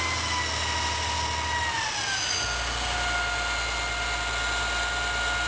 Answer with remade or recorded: recorded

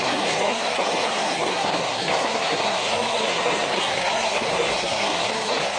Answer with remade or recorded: remade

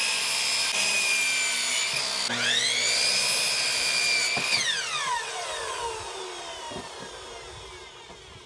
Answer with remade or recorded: recorded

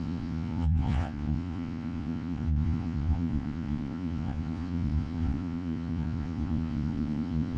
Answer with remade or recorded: remade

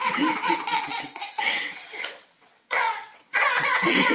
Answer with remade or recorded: remade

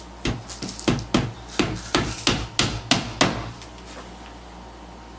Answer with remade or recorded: recorded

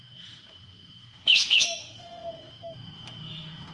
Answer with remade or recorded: remade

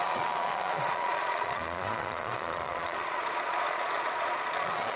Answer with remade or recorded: remade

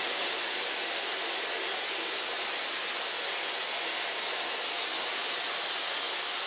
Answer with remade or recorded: recorded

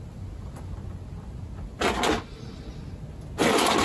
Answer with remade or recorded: recorded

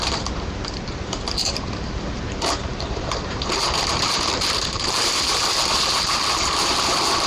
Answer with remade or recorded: remade